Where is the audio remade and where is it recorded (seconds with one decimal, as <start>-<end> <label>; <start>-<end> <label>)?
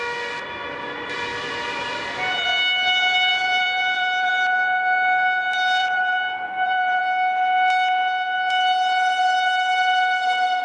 0.0-1.3 recorded; 1.3-2.0 remade; 2.0-3.3 recorded; 3.3-4.3 remade; 4.3-5.8 recorded; 5.8-7.0 remade; 7.0-10.6 recorded